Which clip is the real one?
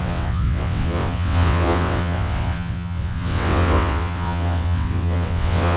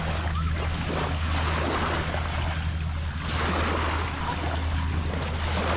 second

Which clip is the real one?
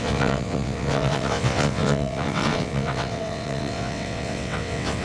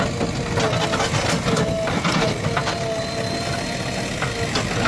second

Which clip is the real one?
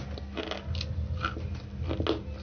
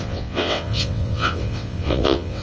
first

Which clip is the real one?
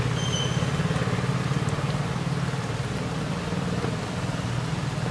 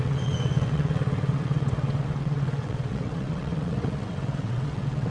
first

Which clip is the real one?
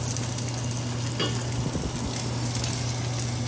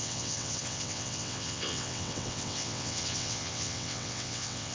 first